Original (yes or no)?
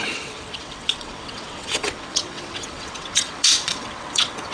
no